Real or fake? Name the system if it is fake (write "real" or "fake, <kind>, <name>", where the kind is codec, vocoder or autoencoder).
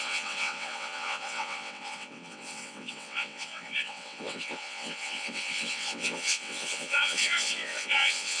fake, vocoder, WaveNeXt